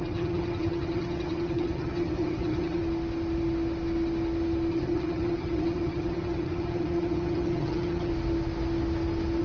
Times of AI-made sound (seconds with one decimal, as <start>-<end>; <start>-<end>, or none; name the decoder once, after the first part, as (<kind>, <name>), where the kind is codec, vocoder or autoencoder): 0.0-2.8 (vocoder, HiFi-GAN); 4.7-8.1